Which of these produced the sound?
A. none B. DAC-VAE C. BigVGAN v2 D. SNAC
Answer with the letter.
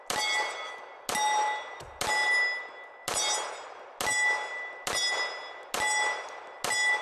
A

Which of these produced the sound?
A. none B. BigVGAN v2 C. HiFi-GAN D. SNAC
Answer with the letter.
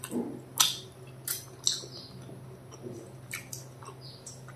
A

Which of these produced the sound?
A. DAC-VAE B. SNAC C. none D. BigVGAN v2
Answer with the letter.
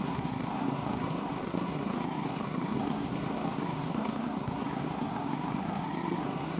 B